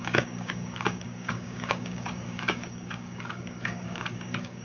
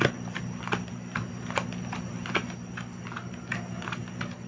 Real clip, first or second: second